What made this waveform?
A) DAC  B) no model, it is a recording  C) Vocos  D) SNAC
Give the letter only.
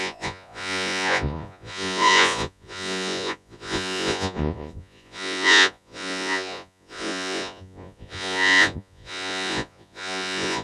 C